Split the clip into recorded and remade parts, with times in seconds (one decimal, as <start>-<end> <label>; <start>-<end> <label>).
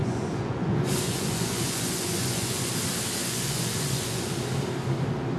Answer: 0.0-2.7 remade; 2.7-3.2 recorded; 3.2-4.3 remade; 4.3-5.4 recorded